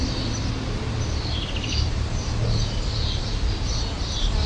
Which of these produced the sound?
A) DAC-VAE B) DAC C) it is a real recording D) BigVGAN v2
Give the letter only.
C